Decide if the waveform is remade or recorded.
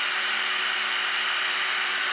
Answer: recorded